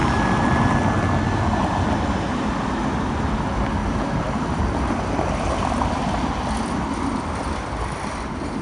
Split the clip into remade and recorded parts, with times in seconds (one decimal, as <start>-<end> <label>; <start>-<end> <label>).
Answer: 0.0-1.6 recorded; 1.6-2.4 remade; 2.4-3.8 recorded; 3.8-4.6 remade; 4.6-8.6 recorded

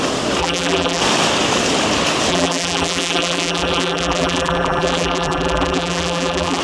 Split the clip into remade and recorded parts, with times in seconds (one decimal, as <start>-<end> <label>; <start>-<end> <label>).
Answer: 0.0-0.4 recorded; 0.4-1.0 remade; 1.0-2.3 recorded; 2.3-6.6 remade

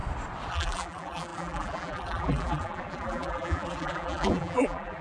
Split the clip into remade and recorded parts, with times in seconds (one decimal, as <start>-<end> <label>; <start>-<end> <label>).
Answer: 0.0-0.5 recorded; 0.5-5.0 remade